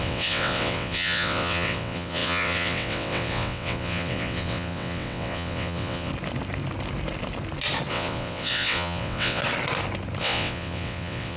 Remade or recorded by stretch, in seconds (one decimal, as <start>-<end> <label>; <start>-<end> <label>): 0.0-6.1 remade; 6.1-7.9 recorded; 7.9-9.4 remade; 9.4-10.2 recorded; 10.2-11.4 remade